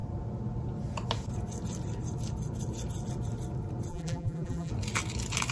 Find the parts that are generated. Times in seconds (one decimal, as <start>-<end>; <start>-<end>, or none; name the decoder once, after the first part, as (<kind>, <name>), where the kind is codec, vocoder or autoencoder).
3.9-4.7 (vocoder, BigVGAN v2)